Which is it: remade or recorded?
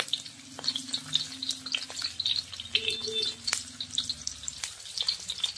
recorded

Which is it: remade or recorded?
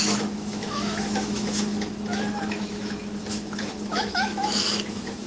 remade